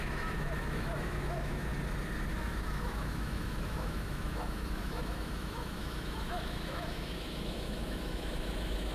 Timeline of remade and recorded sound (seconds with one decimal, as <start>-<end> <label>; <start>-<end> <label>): 0.0-1.7 remade; 1.7-2.3 recorded; 2.3-8.9 remade